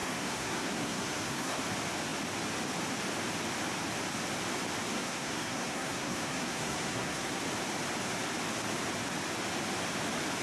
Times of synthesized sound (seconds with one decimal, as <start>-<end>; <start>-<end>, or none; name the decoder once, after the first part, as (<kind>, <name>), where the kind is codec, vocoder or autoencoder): 0.0-1.6 (codec, SNAC); 4.9-7.4